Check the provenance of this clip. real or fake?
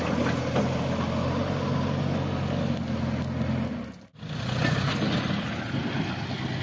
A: real